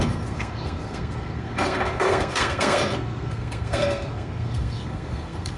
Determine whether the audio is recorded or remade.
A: remade